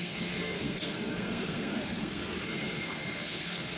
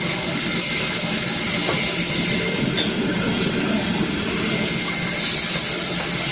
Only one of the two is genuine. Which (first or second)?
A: second